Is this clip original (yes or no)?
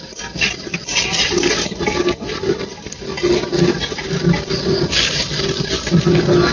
yes